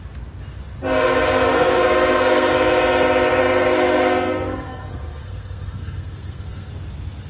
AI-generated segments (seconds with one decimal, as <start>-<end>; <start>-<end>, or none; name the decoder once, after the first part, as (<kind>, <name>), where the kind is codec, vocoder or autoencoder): 1.5-2.5 (codec, SNAC); 3.4-6.7